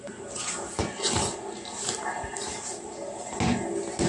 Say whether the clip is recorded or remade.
recorded